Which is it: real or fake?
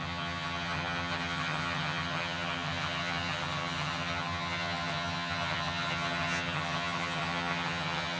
fake